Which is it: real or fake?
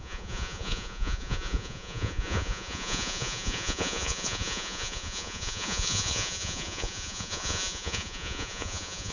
fake